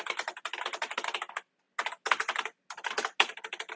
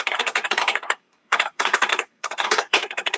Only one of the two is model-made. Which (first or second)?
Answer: second